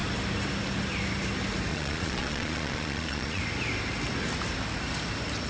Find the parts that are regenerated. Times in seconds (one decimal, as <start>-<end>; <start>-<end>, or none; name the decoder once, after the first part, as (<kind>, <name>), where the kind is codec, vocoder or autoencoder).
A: 1.7-3.4 (vocoder, Vocos)